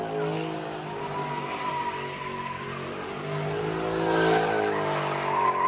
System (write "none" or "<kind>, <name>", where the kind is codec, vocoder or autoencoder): none